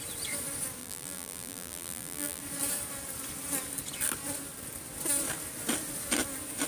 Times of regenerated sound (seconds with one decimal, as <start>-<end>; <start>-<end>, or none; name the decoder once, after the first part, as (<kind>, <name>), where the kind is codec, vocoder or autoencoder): 0.8-2.4 (vocoder, BigVGAN v2)